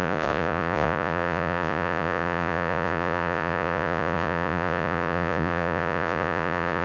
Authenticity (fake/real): fake